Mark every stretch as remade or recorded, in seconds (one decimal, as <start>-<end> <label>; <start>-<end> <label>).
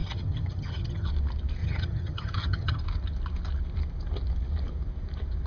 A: 0.0-1.1 remade; 1.1-1.6 recorded; 1.6-2.8 remade; 2.8-5.5 recorded